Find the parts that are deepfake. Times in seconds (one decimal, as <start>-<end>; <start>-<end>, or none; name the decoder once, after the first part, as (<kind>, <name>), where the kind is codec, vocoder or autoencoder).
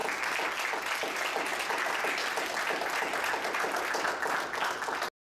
none